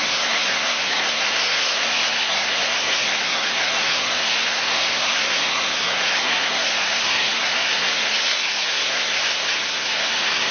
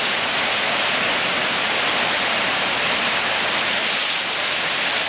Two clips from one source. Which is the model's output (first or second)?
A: first